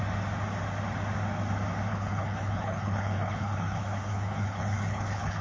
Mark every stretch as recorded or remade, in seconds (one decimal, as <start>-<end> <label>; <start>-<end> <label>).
0.0-1.9 recorded; 1.9-5.4 remade

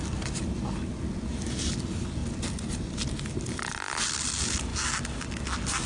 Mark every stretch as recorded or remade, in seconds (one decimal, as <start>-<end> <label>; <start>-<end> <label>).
0.0-5.9 recorded

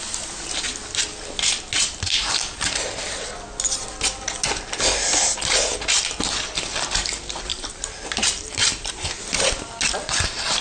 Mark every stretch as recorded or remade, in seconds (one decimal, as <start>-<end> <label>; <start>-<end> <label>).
0.0-7.5 recorded; 7.5-9.2 remade; 9.2-10.6 recorded